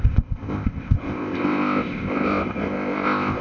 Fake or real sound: fake